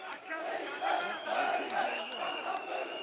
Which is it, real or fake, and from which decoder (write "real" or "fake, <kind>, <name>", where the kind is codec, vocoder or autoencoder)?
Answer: fake, codec, DAC